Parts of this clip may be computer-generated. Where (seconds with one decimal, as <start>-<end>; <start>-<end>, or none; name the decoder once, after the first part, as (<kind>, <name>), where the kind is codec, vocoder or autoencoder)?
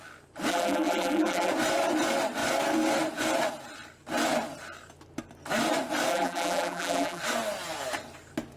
0.5-1.5 (vocoder, BigVGAN v2); 6.1-7.2